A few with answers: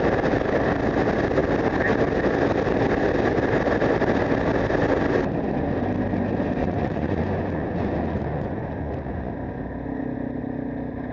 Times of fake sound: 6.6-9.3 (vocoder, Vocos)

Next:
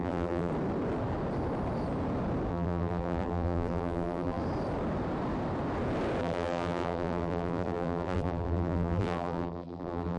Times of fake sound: 0.0-0.5 (vocoder, BigVGAN v2); 2.5-4.4; 6.2-10.2

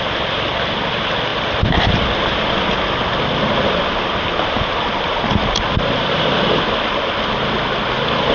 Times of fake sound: none